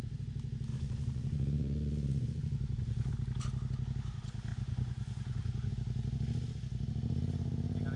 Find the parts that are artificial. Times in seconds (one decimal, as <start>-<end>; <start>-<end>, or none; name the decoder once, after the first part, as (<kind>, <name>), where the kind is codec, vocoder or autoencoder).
0.7-3.1 (vocoder, Vocos); 4.5-5.7

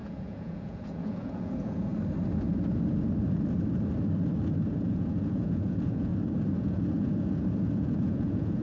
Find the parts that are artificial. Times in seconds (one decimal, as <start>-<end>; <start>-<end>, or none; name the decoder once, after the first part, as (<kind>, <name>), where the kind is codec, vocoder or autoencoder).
0.0-1.9 (vocoder, Vocos); 4.7-6.1; 6.6-8.6

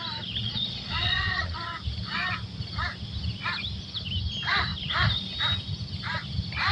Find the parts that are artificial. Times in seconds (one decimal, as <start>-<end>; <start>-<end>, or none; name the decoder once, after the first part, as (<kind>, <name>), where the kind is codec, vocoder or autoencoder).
0.4-1.6 (vocoder, Vocos)

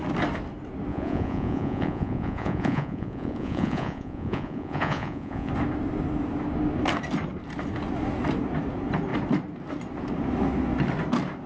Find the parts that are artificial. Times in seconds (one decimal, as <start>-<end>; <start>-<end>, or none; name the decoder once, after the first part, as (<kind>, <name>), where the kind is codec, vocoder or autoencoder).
0.9-5.5 (vocoder, Vocos)

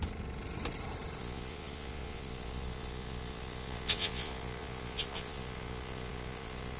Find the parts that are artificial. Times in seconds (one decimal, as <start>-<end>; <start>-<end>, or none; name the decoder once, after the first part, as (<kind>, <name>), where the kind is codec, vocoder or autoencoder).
1.2-6.8 (vocoder, Vocos)

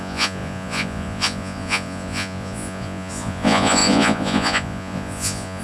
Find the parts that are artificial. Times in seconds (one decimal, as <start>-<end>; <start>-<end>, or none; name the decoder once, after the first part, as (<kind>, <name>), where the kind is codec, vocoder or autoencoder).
0.0-5.6 (vocoder, Vocos)

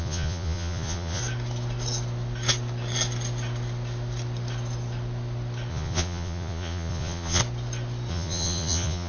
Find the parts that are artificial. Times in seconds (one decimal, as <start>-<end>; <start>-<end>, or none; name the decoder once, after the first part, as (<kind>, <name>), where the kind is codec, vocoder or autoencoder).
0.0-1.2 (vocoder, Vocos); 5.7-7.4; 8.1-9.1